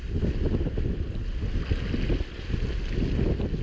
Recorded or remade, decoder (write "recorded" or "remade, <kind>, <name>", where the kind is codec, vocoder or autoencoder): recorded